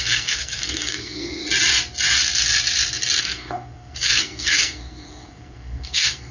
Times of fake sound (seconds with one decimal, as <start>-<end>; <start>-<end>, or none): 0.0-1.4; 3.2-6.3